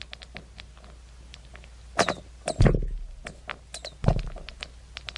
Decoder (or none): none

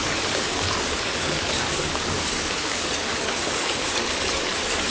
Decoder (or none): codec, DAC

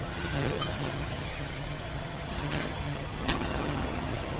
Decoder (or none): vocoder, HiFi-GAN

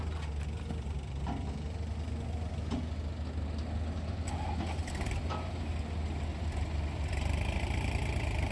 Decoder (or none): none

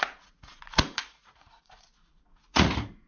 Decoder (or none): vocoder, Vocos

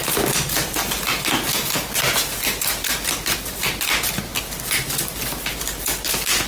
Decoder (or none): none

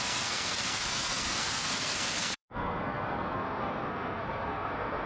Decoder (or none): codec, SNAC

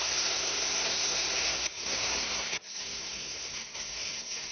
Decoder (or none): codec, SNAC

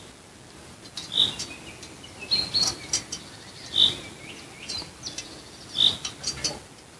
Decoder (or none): none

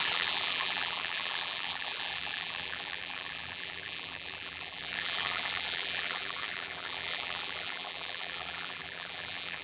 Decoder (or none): vocoder, BigVGAN v2